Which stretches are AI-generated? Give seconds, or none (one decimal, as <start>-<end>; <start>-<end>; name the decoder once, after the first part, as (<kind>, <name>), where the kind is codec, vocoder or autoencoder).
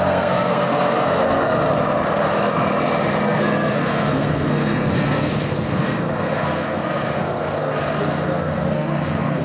0.0-1.6 (codec, SNAC); 3.2-9.4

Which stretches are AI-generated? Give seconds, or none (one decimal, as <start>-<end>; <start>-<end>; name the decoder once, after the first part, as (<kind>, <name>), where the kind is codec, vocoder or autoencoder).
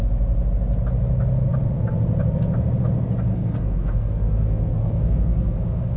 3.3-6.0 (codec, SNAC)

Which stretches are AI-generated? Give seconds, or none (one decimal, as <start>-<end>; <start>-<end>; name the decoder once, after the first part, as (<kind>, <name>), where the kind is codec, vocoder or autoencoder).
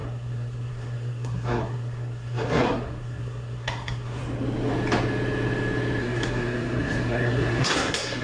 0.0-4.2 (codec, SNAC); 6.0-8.2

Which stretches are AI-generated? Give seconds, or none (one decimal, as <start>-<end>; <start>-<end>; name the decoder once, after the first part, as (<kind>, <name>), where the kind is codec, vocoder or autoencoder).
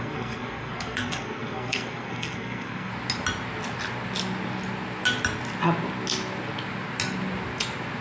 0.0-2.9 (codec, SNAC)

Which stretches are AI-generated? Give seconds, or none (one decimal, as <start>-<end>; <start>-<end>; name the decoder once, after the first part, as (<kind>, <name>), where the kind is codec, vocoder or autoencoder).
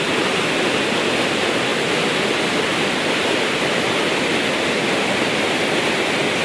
none